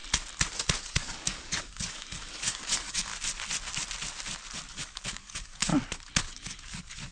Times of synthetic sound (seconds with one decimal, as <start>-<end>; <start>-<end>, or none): 0.8-3.1; 4.7-5.7; 6.2-7.1